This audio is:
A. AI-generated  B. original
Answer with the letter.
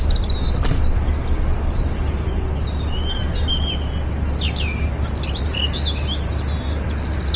B